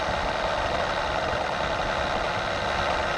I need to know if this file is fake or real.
real